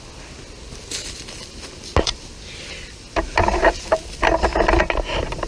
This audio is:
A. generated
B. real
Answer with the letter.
B